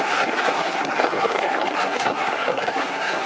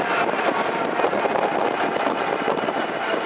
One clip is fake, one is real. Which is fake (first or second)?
first